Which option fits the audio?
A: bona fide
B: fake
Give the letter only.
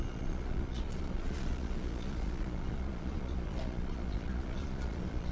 B